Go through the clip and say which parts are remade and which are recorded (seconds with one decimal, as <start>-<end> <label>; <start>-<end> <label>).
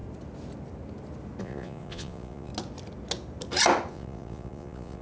0.0-1.4 recorded; 1.4-2.5 remade; 2.5-3.9 recorded; 3.9-5.0 remade